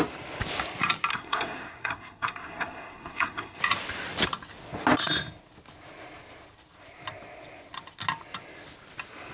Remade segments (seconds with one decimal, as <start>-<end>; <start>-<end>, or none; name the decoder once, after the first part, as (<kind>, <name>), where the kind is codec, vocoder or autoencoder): 1.1-3.6 (codec, SNAC)